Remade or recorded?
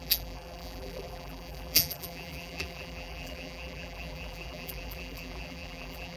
remade